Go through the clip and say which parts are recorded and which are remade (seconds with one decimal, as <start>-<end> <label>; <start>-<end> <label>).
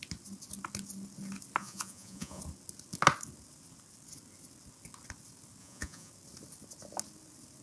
0.0-1.6 recorded; 1.6-2.4 remade; 2.4-5.6 recorded; 5.6-6.1 remade; 6.1-7.6 recorded